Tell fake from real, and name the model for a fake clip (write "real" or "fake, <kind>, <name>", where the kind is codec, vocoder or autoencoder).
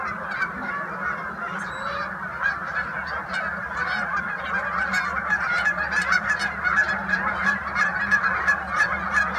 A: real